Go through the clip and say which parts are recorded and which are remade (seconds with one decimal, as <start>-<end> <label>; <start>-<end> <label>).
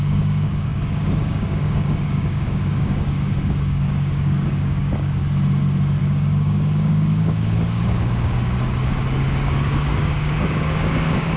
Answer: 0.0-5.2 remade; 5.2-6.0 recorded; 6.0-11.4 remade